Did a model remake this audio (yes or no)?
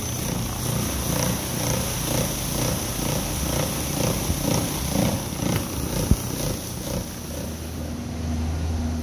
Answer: no